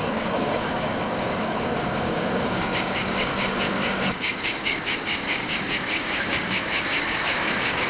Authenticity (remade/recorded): remade